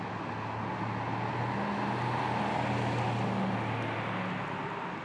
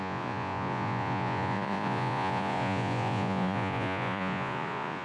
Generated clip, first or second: second